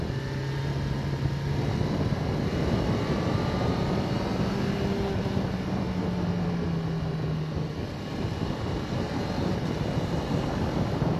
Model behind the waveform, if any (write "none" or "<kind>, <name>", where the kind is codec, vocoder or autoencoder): none